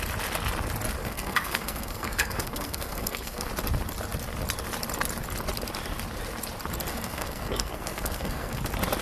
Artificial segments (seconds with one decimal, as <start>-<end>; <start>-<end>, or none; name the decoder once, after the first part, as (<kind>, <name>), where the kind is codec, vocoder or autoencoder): 1.0-3.5 (codec, SNAC); 6.9-8.6